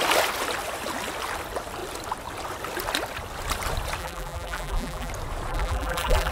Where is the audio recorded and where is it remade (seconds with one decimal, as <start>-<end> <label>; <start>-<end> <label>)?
0.0-4.0 recorded; 4.0-5.1 remade; 5.1-5.5 recorded; 5.5-6.3 remade